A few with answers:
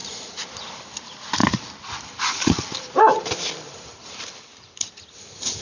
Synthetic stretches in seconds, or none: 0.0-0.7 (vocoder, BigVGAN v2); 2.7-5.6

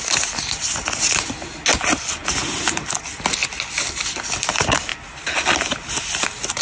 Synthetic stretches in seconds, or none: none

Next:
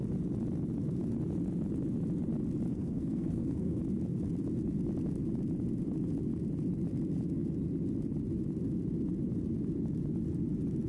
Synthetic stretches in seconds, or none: 2.7-3.8 (codec, SNAC)